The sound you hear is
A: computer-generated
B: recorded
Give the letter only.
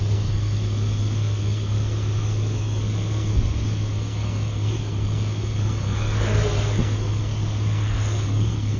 A